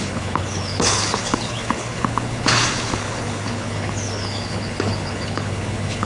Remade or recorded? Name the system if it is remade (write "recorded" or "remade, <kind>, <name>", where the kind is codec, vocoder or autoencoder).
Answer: remade, codec, HILCodec